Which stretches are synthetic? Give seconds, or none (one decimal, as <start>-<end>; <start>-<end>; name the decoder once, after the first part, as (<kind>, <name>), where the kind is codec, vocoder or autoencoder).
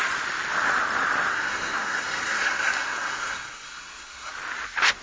1.3-4.3 (codec, SNAC)